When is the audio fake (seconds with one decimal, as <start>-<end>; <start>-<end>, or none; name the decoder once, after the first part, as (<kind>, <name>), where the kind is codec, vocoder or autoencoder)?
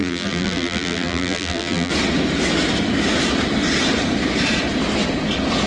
0.0-1.9 (vocoder, BigVGAN v2)